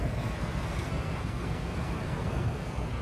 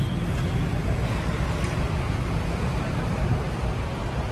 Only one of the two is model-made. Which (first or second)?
first